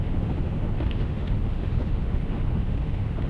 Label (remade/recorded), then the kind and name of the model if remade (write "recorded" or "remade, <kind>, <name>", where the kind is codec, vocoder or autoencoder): remade, autoencoder, DAC-VAE